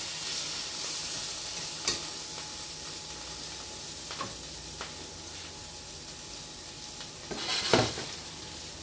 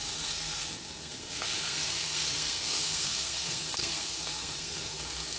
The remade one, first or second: second